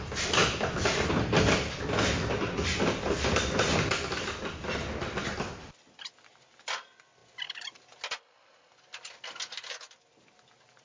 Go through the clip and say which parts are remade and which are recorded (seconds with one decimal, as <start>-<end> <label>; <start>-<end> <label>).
0.0-10.8 recorded